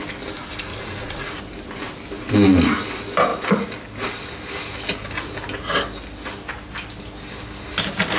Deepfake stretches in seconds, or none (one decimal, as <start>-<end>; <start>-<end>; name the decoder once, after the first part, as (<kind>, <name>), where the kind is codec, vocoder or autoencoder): 0.7-1.4 (vocoder, Vocos)